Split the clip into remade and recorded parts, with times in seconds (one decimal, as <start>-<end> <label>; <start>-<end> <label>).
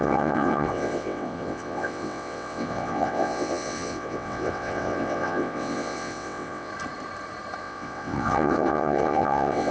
0.0-6.7 remade; 6.7-7.6 recorded; 7.6-9.7 remade